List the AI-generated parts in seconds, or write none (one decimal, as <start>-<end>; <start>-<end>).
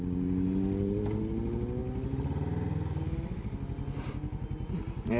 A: none